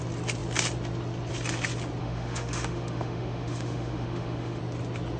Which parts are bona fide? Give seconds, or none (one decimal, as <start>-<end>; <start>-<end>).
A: 0.0-2.0; 4.6-5.2

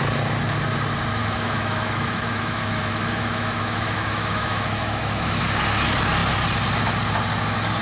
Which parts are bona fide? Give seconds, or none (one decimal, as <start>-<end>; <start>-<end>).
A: 0.0-1.2; 5.4-7.8